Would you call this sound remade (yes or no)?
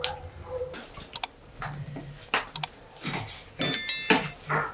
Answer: no